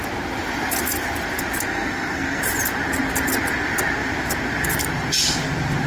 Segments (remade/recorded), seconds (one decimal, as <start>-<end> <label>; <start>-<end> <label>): 0.0-1.7 recorded; 1.7-2.4 remade; 2.4-5.9 recorded